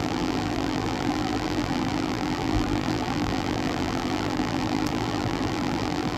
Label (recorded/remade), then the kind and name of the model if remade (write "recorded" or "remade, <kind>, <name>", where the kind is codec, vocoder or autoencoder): remade, vocoder, BigVGAN v2